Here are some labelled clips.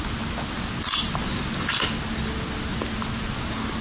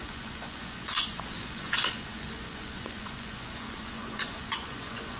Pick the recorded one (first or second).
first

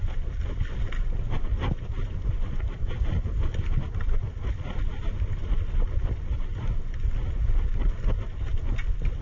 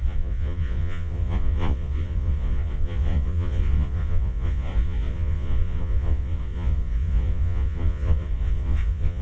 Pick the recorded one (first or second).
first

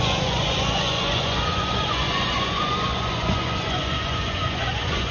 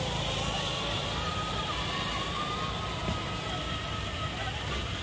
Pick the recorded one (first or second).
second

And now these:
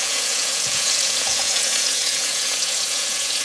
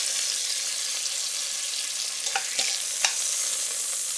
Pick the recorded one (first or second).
second